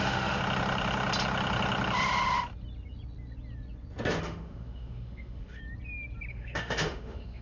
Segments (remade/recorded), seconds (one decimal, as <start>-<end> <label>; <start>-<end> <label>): 0.0-0.4 remade; 0.4-4.2 recorded; 4.2-5.6 remade; 5.6-6.3 recorded; 6.3-7.4 remade